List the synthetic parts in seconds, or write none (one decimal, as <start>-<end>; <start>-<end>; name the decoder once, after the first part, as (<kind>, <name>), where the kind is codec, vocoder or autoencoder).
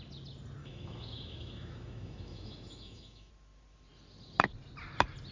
0.6-3.3 (autoencoder, DAC-VAE)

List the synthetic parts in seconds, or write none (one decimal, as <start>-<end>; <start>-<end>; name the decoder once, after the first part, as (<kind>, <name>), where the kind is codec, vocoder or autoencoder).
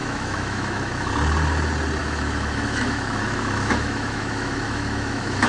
0.0-1.1 (autoencoder, DAC-VAE); 2.0-5.5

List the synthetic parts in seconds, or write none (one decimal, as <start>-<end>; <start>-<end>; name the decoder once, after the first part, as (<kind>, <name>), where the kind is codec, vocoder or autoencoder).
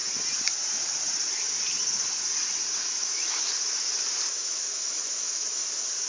2.9-3.5 (autoencoder, DAC-VAE); 4.3-5.6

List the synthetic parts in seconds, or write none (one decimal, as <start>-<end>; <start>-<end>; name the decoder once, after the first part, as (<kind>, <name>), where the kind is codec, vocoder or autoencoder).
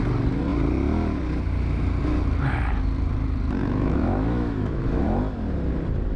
3.6-5.2 (autoencoder, DAC-VAE)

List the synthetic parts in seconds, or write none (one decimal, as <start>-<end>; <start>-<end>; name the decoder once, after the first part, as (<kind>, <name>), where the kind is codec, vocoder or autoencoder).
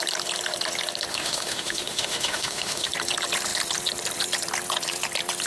1.1-2.9 (autoencoder, DAC-VAE)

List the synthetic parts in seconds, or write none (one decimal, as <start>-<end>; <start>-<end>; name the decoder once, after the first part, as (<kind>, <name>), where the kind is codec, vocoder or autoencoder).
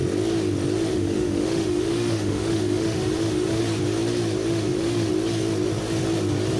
0.9-3.6 (autoencoder, DAC-VAE); 4.5-5.1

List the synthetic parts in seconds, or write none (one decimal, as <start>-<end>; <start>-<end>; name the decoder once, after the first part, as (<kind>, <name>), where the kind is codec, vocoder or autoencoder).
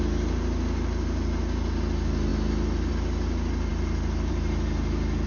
none